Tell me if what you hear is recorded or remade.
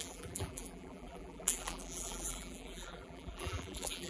remade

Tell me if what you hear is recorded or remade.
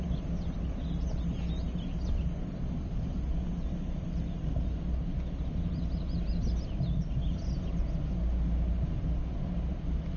recorded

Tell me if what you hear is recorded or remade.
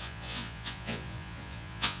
remade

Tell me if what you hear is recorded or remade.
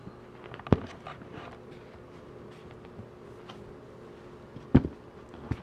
recorded